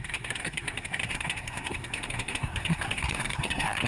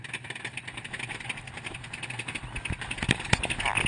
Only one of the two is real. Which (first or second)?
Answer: second